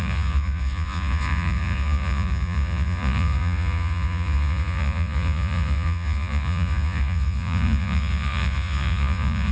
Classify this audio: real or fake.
fake